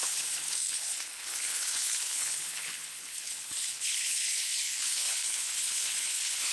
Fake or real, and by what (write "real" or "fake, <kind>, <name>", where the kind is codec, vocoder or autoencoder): fake, codec, HILCodec